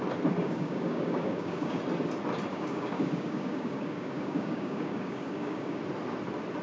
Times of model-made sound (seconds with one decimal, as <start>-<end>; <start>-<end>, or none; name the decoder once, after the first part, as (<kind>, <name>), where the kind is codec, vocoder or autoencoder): 0.4-1.8 (codec, DAC); 2.5-5.8